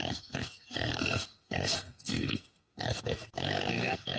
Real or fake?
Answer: fake